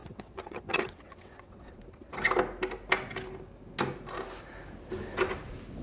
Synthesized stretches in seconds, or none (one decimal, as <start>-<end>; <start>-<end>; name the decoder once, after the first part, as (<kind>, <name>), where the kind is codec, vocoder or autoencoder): 0.0-1.7 (vocoder, WaveNeXt)